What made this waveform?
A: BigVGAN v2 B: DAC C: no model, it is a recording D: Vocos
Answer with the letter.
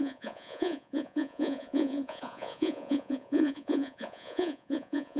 D